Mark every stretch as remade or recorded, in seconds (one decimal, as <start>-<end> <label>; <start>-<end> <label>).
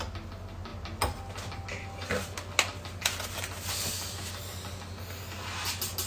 0.0-6.1 recorded